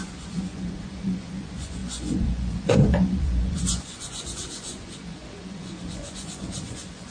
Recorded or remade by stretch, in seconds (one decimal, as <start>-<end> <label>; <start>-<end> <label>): 0.0-7.1 remade